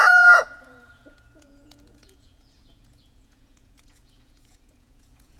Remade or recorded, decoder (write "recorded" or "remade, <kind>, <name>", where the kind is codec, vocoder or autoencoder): remade, vocoder, Vocos